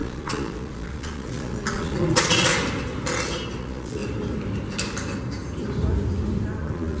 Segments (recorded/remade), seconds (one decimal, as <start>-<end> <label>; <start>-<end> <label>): 0.0-2.5 remade; 2.5-3.6 recorded; 3.6-4.0 remade; 4.0-6.6 recorded; 6.6-7.0 remade

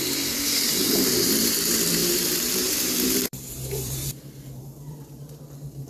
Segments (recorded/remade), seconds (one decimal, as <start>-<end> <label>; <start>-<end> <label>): 0.0-5.9 remade

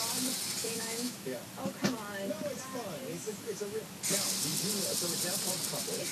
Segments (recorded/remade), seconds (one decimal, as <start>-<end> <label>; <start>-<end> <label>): 0.0-0.6 recorded; 0.6-1.4 remade; 1.4-3.1 recorded; 3.1-3.8 remade; 3.8-6.1 recorded

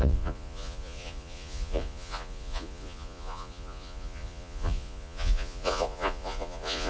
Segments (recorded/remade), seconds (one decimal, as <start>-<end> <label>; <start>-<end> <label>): 0.0-6.9 remade

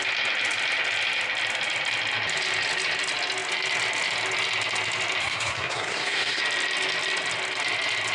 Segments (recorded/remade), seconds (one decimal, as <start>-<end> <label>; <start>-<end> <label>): 0.0-5.2 recorded; 5.2-6.4 remade; 6.4-8.1 recorded

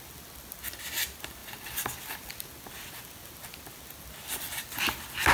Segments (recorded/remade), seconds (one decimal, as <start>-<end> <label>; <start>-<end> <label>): 0.0-1.4 recorded; 1.4-2.3 remade; 2.3-5.3 recorded

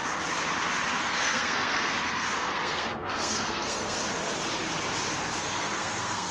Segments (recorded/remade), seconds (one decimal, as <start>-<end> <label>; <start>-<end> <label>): 0.0-1.0 recorded; 1.0-4.0 remade; 4.0-5.4 recorded; 5.4-6.3 remade